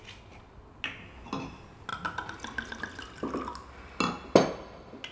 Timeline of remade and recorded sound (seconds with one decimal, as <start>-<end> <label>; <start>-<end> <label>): 0.0-5.1 recorded